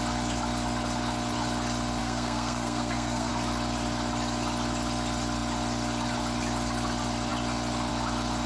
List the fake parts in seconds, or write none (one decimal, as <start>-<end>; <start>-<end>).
2.0-3.3